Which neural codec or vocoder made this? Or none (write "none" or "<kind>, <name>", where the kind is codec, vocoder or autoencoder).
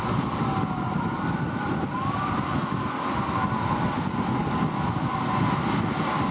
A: none